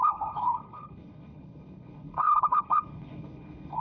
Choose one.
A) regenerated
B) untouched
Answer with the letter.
A